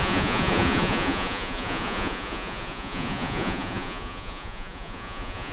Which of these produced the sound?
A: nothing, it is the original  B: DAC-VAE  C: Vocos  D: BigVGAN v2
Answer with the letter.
C